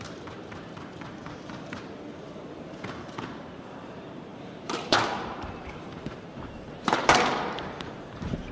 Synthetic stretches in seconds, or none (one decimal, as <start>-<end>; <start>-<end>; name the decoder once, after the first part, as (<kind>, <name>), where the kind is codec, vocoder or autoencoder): 0.0-8.5 (vocoder, BigVGAN v2)